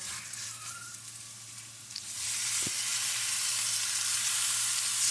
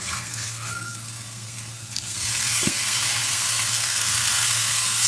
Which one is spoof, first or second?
second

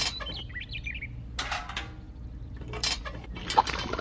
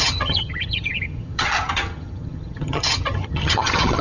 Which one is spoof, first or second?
second